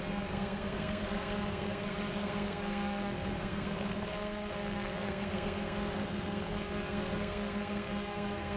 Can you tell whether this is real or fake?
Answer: fake